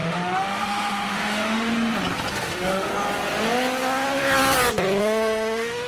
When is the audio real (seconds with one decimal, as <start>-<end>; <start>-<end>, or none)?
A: 1.7-2.3; 2.9-5.0